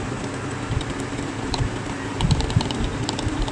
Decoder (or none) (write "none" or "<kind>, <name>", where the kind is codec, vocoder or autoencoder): vocoder, BigVGAN v2